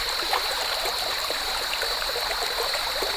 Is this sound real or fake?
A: fake